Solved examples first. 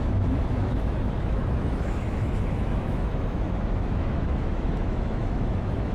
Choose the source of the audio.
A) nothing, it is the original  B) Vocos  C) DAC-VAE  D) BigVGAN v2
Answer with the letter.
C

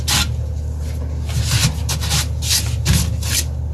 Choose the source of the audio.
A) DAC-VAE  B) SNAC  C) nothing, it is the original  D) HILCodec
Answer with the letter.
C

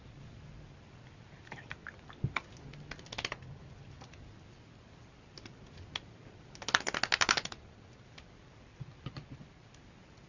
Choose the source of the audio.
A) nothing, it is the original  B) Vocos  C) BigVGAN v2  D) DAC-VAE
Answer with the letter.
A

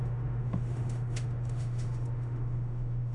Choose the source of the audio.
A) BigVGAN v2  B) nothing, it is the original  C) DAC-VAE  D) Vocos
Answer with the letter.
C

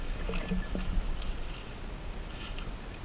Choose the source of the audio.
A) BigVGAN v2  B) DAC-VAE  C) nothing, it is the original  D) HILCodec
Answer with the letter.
C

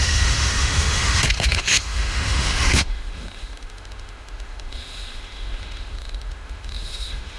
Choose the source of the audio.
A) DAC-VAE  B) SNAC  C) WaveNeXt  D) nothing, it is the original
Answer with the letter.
A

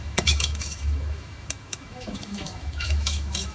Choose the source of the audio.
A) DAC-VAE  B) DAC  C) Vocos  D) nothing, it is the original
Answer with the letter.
A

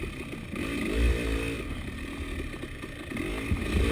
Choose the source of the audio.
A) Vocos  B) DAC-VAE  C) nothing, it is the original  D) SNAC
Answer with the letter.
C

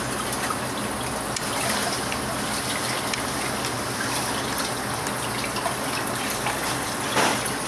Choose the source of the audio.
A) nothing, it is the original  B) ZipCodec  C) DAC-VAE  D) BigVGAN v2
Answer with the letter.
A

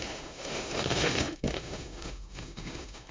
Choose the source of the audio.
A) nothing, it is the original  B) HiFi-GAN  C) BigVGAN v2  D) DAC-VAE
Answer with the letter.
D